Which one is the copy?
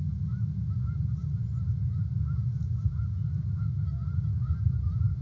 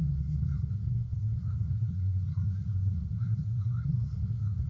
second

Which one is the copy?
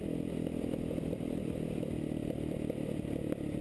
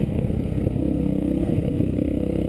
second